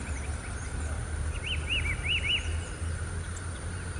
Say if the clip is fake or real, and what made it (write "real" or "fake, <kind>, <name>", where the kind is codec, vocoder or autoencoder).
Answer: real